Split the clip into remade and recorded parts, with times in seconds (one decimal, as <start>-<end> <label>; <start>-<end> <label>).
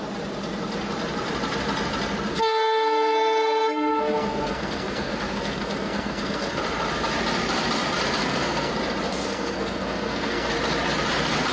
0.0-2.3 recorded; 2.3-6.6 remade; 6.6-8.2 recorded; 8.2-8.7 remade; 8.7-9.1 recorded; 9.1-10.5 remade; 10.5-11.5 recorded